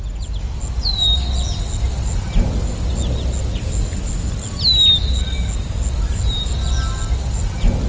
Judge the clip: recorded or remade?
recorded